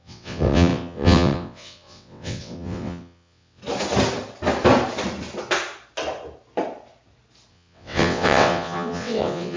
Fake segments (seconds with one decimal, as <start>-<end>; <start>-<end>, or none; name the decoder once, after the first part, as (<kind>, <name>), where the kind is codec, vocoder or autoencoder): 0.0-3.6 (vocoder, WaveNeXt); 7.5-9.6